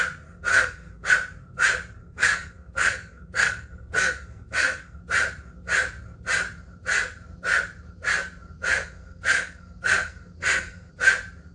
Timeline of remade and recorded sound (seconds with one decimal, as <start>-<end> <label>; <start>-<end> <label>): 0.0-0.5 recorded; 0.5-1.1 remade; 1.1-2.0 recorded; 2.0-5.0 remade; 5.0-8.7 recorded; 8.7-10.9 remade; 10.9-11.5 recorded